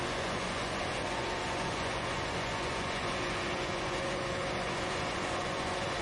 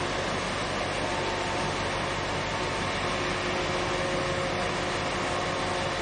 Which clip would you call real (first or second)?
second